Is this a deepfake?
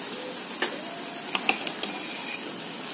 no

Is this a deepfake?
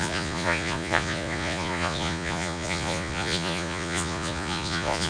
yes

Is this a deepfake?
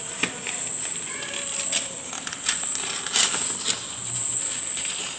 no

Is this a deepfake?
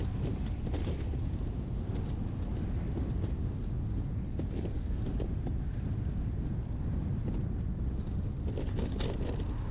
no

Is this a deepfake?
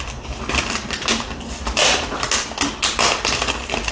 no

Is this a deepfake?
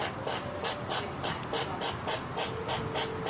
no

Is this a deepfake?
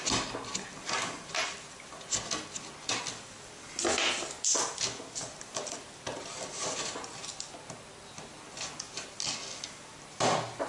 no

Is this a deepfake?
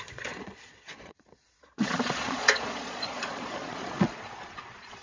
yes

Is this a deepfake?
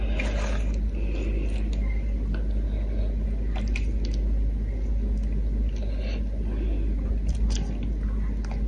no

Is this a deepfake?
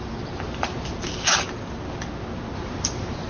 no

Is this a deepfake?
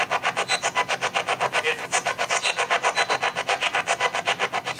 no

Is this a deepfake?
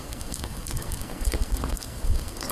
yes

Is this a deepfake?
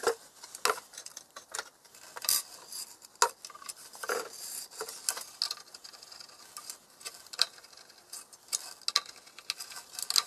no